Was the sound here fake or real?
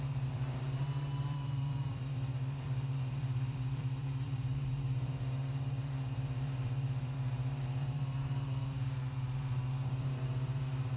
fake